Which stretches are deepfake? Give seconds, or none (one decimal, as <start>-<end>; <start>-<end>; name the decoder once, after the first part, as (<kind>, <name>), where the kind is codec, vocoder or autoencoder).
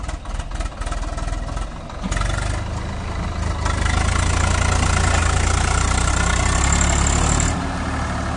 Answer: 5.2-6.1 (vocoder, BigVGAN v2)